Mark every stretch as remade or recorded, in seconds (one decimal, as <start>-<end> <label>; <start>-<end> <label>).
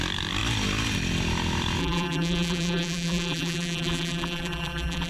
0.0-1.8 recorded; 1.8-5.1 remade